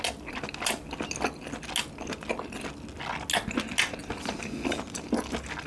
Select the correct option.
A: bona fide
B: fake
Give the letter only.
A